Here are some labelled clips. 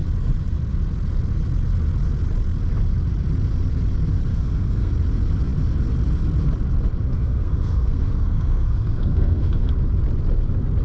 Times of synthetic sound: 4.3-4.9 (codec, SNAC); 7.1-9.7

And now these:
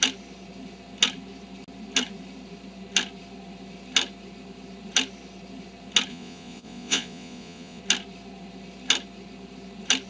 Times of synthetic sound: 6.1-7.8 (vocoder, Vocos)

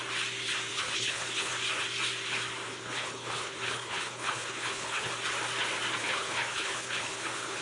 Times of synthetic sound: 0.7-1.5 (codec, HILCodec); 2.7-5.1; 6.0-7.6